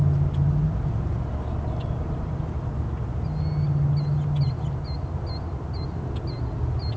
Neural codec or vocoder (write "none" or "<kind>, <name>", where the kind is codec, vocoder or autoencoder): none